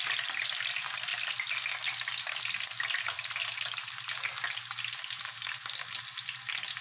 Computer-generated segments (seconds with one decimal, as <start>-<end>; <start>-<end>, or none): none